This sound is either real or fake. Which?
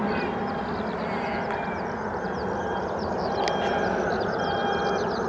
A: real